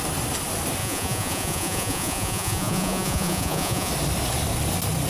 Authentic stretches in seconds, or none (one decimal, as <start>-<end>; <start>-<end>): 0.0-0.8; 3.9-5.1